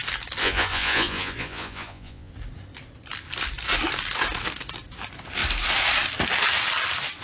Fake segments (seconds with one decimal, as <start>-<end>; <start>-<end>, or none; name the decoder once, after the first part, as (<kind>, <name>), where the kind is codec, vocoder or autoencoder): 0.4-2.3 (vocoder, Vocos)

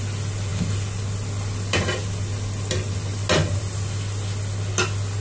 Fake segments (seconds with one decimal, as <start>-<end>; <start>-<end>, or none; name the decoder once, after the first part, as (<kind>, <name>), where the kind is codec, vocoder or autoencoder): none